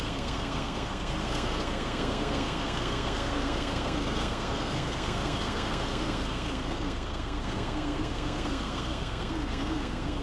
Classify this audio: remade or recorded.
remade